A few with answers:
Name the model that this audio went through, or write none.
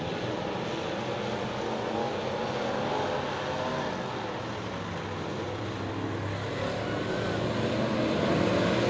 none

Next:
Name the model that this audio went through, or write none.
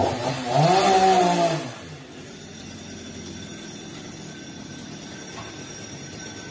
none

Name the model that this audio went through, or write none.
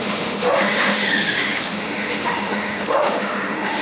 autoencoder, DAC-VAE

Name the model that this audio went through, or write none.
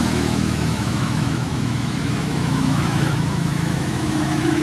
autoencoder, DAC-VAE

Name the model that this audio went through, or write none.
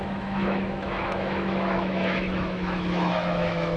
autoencoder, DAC-VAE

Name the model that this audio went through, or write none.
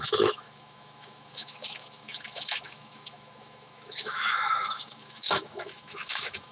autoencoder, DAC-VAE